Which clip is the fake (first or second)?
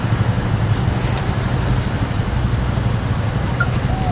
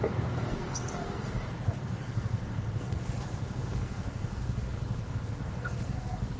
second